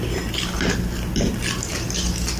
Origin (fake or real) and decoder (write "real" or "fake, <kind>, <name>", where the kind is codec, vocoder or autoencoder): real